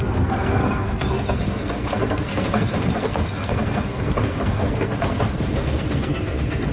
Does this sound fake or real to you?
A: fake